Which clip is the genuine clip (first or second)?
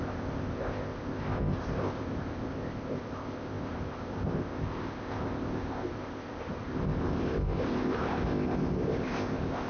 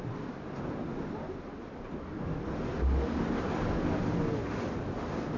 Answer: second